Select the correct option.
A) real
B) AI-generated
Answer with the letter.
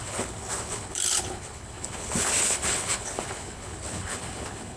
B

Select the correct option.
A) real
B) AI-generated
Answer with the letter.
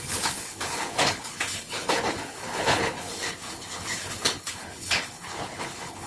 B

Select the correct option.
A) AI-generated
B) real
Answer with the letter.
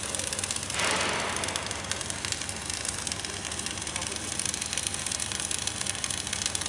B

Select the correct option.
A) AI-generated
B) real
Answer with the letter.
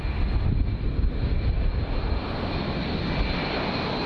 B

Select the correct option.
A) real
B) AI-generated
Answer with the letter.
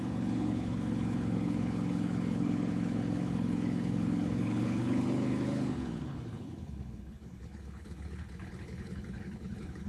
B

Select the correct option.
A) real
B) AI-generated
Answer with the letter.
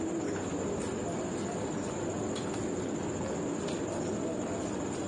A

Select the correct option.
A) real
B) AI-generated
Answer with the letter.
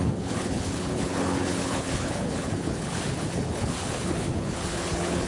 B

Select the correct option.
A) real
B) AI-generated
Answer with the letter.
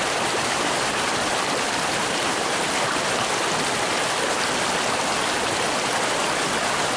A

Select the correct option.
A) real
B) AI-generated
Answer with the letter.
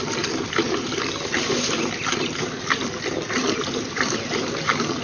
A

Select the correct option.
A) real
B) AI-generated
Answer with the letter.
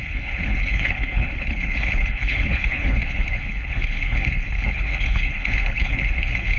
B